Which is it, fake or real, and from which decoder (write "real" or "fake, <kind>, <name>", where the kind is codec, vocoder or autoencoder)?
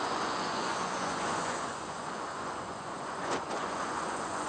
fake, vocoder, Vocos